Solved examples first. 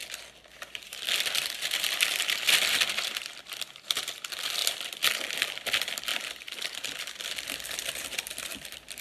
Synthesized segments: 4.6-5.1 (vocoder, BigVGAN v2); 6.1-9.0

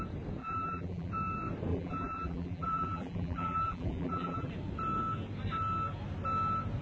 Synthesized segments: 0.4-1.1 (vocoder, BigVGAN v2); 1.7-4.5

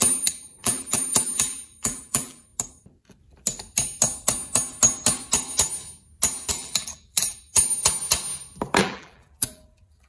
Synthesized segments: 0.0-2.5 (vocoder, BigVGAN v2); 6.5-7.7; 8.8-10.1

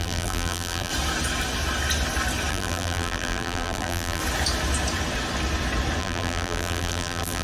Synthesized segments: 0.0-0.9 (vocoder, BigVGAN v2); 2.5-4.2; 6.0-7.4

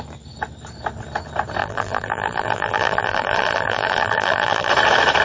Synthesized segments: 1.6-4.7 (vocoder, BigVGAN v2)

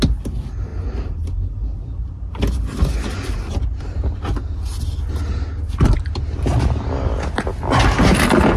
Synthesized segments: none

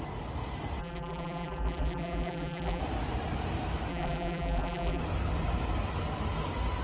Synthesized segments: 0.8-2.8 (vocoder, BigVGAN v2); 3.9-5.0

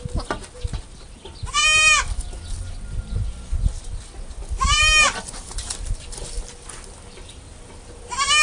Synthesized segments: 4.7-6.0 (vocoder, BigVGAN v2)